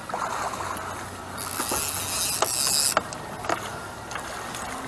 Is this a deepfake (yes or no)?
no